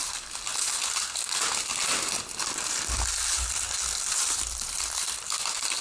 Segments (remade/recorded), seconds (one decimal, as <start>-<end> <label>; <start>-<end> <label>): 0.0-0.5 remade; 0.5-4.0 recorded; 4.0-5.8 remade